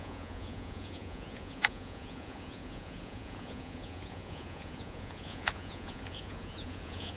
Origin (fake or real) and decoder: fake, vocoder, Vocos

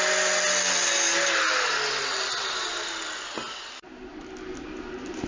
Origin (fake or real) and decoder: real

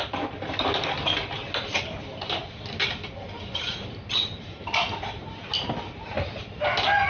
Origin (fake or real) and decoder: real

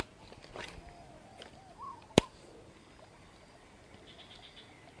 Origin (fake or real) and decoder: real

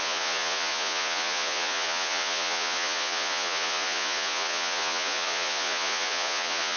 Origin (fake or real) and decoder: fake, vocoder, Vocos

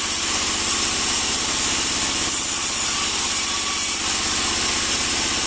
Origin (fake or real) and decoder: real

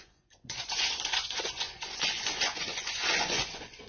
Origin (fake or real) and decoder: fake, vocoder, Vocos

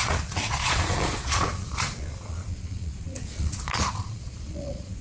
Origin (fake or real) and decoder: fake, vocoder, Vocos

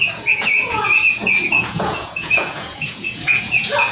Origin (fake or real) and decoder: fake, vocoder, Vocos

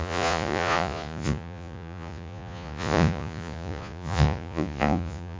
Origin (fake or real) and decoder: fake, vocoder, Vocos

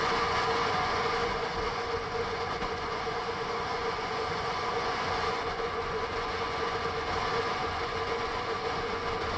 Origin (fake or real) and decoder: fake, vocoder, Vocos